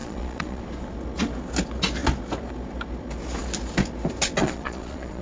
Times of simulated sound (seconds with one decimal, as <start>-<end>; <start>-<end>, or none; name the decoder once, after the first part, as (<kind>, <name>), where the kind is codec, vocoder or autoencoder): 0.0-0.6 (vocoder, Vocos); 4.4-5.2